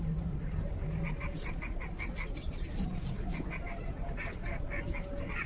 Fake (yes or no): no